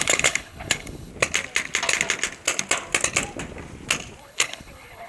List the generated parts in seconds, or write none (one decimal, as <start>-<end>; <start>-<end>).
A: 0.0-1.1; 4.2-5.1